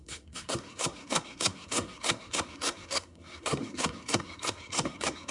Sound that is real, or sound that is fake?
fake